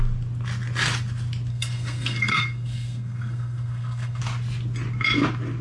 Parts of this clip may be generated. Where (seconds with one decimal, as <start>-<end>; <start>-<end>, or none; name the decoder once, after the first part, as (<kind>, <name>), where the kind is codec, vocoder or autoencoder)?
1.5-4.2 (codec, SNAC)